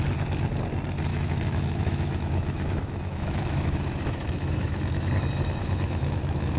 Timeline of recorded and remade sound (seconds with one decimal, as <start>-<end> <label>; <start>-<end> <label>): 0.0-1.1 recorded; 1.1-5.1 remade; 5.1-5.6 recorded; 5.6-6.6 remade